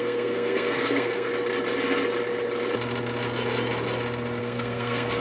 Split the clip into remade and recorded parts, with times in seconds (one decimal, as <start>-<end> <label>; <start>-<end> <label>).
0.0-1.3 remade; 1.3-4.4 recorded; 4.4-5.2 remade